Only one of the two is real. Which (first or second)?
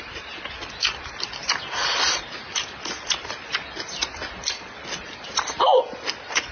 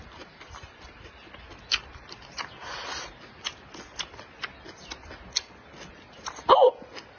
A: second